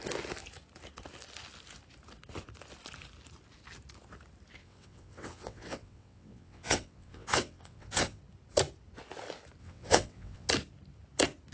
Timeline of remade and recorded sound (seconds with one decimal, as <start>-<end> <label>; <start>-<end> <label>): 0.0-4.6 recorded; 4.6-8.2 remade; 8.2-9.6 recorded; 9.6-10.5 remade; 10.5-11.5 recorded